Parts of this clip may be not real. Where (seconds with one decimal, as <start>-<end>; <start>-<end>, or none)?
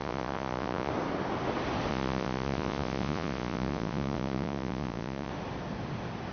0.0-0.9; 1.9-5.3